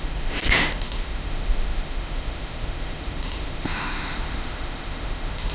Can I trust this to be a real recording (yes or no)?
no